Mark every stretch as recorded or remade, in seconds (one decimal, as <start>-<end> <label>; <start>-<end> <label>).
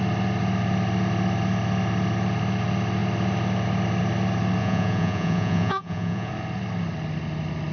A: 0.0-4.6 recorded; 4.6-6.3 remade; 6.3-7.7 recorded